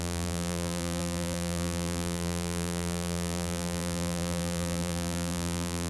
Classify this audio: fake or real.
fake